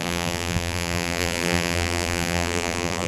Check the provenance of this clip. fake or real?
fake